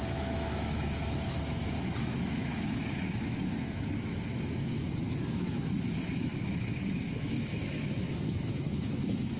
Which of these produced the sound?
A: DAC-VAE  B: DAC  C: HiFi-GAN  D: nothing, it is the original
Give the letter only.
A